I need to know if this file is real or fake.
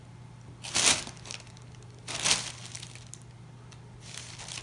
real